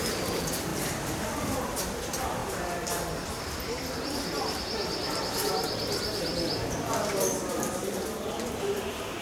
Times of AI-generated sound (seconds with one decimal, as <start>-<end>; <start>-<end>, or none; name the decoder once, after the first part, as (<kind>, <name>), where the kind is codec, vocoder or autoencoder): 0.0-0.7 (vocoder, BigVGAN v2); 1.4-9.2